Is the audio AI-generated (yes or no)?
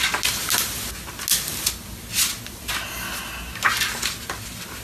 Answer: no